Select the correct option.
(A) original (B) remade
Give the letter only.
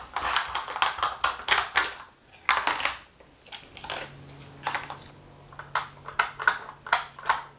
A